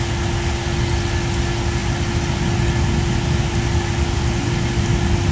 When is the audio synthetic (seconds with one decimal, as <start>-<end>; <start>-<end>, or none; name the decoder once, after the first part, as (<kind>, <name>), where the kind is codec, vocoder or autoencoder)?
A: none

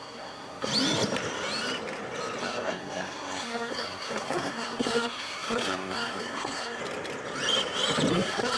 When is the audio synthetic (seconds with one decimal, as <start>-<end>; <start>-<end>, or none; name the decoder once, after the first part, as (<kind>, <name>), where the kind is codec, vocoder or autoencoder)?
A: 0.0-0.7 (codec, SNAC); 2.4-6.8; 8.1-8.6

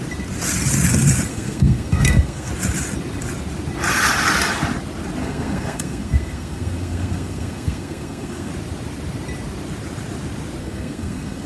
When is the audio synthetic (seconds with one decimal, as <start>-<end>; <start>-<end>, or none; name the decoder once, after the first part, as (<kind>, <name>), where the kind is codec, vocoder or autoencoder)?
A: 1.3-2.5 (codec, SNAC); 5.2-8.5; 10.6-11.5

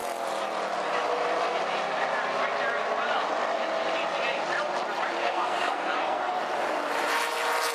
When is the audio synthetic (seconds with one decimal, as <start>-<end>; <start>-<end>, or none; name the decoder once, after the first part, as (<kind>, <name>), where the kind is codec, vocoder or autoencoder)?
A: 5.2-6.4 (codec, SNAC)

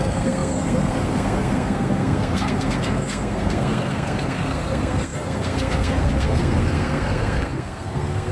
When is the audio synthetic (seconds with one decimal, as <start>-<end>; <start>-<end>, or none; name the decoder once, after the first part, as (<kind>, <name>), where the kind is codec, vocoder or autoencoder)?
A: 0.0-8.3 (codec, SNAC)